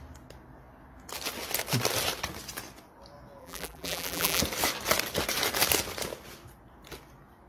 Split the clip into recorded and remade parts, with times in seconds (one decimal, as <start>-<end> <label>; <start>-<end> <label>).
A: 0.0-3.4 recorded; 3.4-4.4 remade; 4.4-7.5 recorded